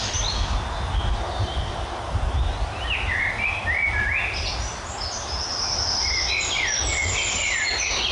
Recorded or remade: recorded